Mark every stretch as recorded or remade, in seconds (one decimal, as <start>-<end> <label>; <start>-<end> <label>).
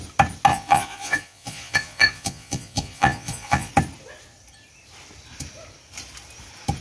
0.0-0.5 recorded; 0.5-3.7 remade; 3.7-6.8 recorded